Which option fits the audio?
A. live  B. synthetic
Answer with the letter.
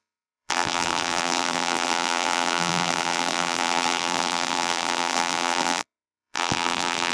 B